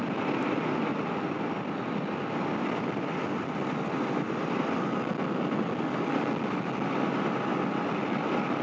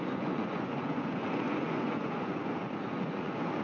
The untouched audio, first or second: first